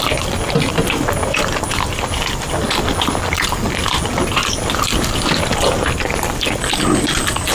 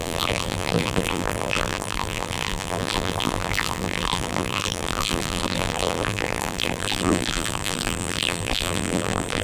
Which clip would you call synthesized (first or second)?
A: second